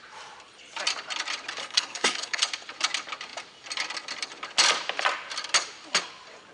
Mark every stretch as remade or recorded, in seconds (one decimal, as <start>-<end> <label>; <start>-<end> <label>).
0.0-1.6 recorded; 1.6-2.4 remade; 2.4-6.5 recorded